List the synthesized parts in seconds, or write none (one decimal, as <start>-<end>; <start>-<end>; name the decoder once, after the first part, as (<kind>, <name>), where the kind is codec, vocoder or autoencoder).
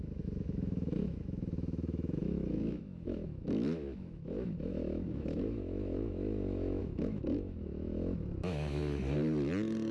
0.0-8.8 (autoencoder, DAC-VAE)